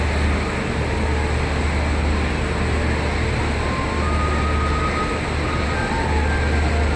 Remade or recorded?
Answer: recorded